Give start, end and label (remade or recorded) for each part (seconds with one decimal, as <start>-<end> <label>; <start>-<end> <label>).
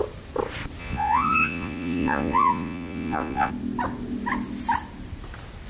0.0-0.8 recorded; 0.8-3.5 remade; 3.5-5.7 recorded